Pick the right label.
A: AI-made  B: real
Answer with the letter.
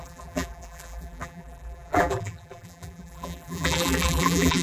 A